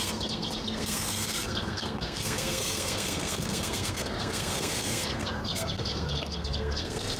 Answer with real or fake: fake